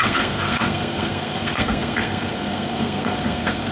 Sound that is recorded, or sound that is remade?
remade